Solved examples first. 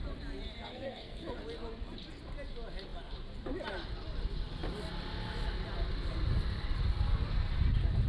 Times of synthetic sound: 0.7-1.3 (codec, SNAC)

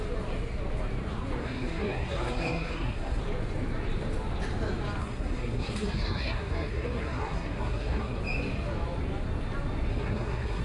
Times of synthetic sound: 1.4-3.2 (codec, SNAC); 5.0-8.2; 9.9-10.6